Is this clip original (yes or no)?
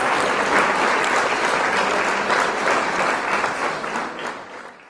yes